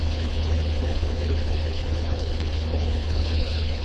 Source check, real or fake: fake